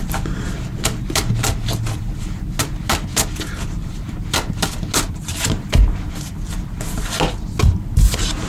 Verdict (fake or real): real